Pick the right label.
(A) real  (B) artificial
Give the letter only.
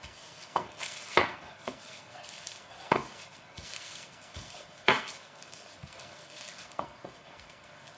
B